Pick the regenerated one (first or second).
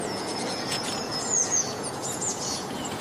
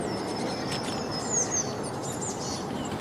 first